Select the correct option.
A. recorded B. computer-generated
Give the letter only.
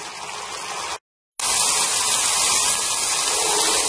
A